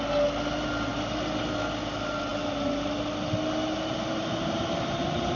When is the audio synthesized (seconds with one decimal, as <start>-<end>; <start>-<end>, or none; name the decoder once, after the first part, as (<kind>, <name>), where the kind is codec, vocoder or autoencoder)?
none